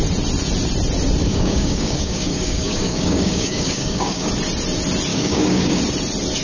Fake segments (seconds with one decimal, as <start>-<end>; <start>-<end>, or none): 1.2-4.3; 5.1-5.8